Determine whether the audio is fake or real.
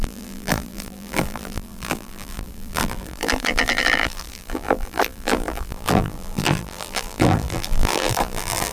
fake